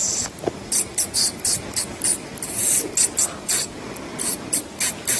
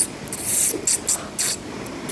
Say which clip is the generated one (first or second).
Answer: first